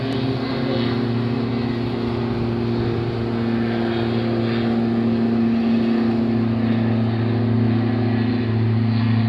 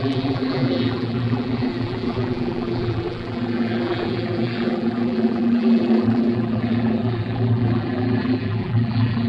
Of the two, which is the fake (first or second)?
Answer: second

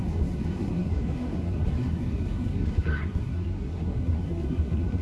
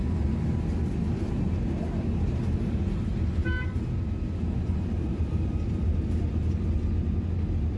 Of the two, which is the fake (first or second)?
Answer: first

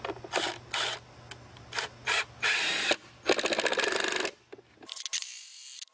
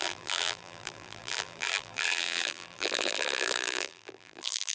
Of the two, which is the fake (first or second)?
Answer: second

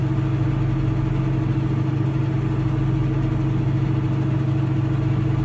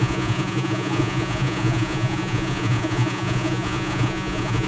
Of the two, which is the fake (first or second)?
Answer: second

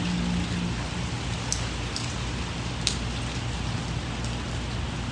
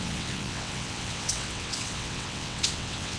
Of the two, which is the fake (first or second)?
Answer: second